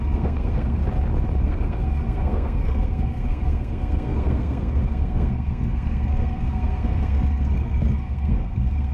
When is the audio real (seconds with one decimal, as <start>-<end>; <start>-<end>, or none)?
0.8-1.4